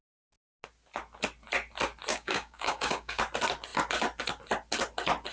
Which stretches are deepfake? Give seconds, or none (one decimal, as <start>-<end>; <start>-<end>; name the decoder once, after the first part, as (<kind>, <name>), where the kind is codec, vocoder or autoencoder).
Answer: 2.1-3.2 (codec, DAC)